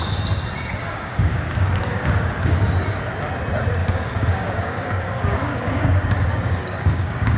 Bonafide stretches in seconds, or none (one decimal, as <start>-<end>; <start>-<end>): 0.0-0.8; 2.3-3.8